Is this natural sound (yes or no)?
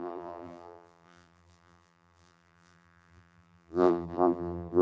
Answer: no